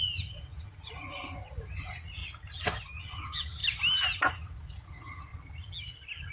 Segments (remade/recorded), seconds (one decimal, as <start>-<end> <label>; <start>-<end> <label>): 0.0-2.2 remade; 2.2-3.0 recorded; 3.0-3.6 remade; 3.6-4.3 recorded; 4.3-5.3 remade; 5.3-6.3 recorded